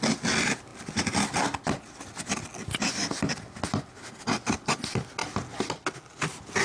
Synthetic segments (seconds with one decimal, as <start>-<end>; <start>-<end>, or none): none